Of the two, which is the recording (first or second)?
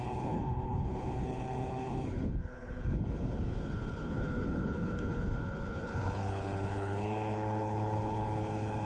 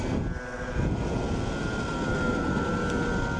second